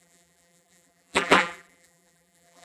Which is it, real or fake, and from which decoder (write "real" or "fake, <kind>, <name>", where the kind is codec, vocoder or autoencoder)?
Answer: fake, vocoder, BigVGAN v2